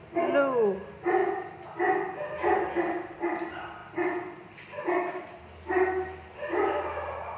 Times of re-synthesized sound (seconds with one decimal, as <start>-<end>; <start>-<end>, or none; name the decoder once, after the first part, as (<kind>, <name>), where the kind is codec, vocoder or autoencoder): none